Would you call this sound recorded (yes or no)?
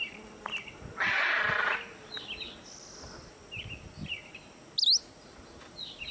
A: yes